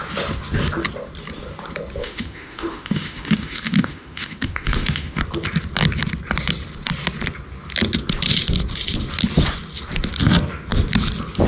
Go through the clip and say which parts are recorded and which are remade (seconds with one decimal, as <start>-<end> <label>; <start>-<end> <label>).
0.0-2.0 recorded; 2.0-5.2 remade; 5.2-11.5 recorded